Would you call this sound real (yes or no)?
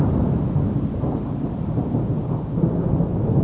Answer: yes